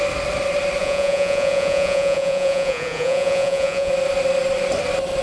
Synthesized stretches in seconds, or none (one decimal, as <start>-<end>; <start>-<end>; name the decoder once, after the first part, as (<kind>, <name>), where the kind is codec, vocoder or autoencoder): 0.8-3.9 (vocoder, Vocos)